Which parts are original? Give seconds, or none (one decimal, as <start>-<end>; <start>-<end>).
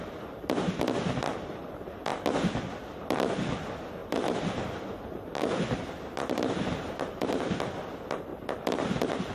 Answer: 0.0-4.0; 7.6-9.3